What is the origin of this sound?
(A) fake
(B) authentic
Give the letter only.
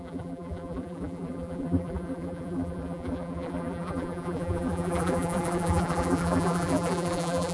A